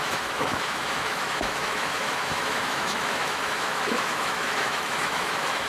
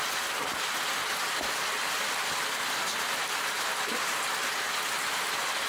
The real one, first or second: second